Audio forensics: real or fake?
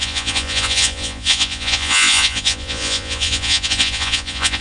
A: fake